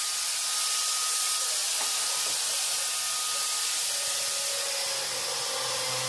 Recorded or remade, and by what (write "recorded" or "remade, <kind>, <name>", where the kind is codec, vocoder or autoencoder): recorded